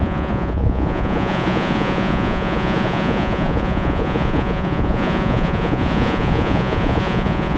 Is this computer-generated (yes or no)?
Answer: yes